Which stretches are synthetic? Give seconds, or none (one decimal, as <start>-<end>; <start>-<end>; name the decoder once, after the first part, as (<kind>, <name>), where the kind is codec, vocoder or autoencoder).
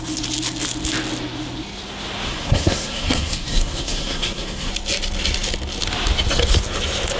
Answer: 2.3-4.7 (codec, SNAC)